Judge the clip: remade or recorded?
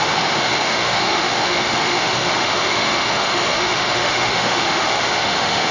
remade